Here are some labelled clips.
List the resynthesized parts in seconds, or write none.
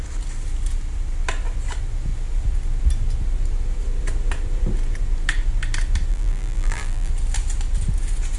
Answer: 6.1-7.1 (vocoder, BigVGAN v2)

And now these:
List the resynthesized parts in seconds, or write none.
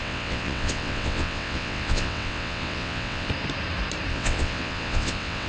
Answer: 0.0-3.3 (vocoder, WaveNeXt); 4.1-5.5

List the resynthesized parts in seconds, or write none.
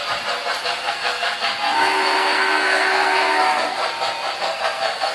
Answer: 0.6-3.8 (codec, SNAC); 4.4-5.1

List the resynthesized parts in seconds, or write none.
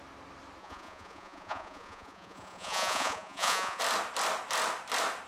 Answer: 0.6-3.8 (vocoder, Vocos)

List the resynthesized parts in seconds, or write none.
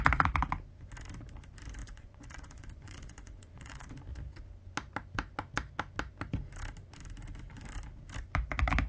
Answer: 1.8-3.9 (vocoder, Vocos)